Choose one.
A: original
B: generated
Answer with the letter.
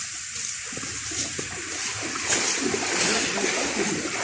A